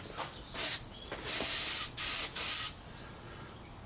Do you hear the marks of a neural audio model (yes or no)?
no